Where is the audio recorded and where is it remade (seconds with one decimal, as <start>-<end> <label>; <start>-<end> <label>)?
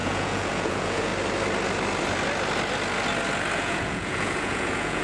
0.0-1.1 remade; 1.1-3.6 recorded; 3.6-5.0 remade